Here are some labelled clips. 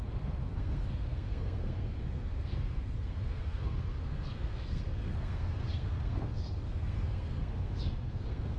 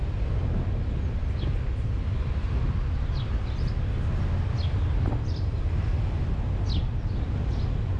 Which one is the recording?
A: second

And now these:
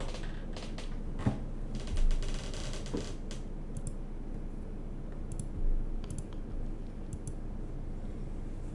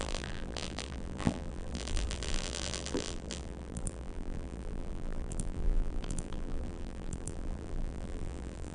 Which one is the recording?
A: first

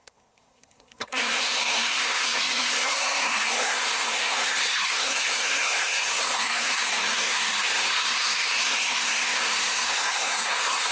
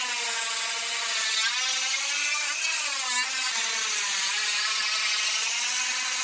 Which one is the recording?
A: second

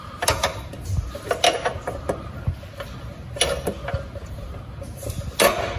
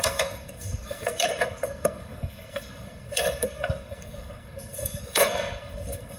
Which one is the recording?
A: first